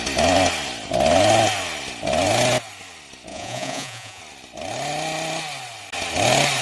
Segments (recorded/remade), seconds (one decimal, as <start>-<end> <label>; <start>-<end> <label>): 0.0-3.3 recorded; 3.3-4.2 remade; 4.2-6.6 recorded